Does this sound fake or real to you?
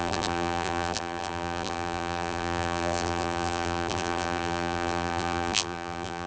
fake